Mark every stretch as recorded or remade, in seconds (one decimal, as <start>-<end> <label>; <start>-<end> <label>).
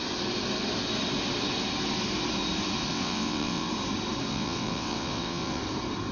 0.0-2.9 recorded; 2.9-3.7 remade; 3.7-4.3 recorded; 4.3-5.6 remade; 5.6-6.1 recorded